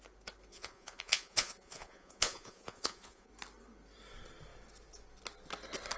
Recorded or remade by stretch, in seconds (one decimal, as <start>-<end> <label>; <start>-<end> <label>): 0.0-0.5 recorded; 0.5-3.3 remade; 3.3-6.0 recorded